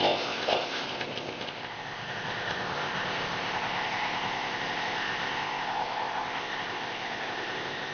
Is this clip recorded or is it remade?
remade